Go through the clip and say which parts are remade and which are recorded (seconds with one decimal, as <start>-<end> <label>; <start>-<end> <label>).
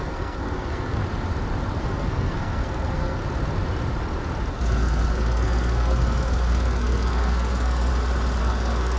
0.0-1.0 remade; 1.0-1.8 recorded; 1.8-3.2 remade; 3.2-4.5 recorded; 4.5-7.9 remade; 7.9-8.4 recorded; 8.4-9.0 remade